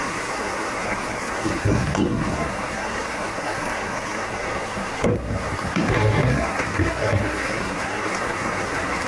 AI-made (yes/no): yes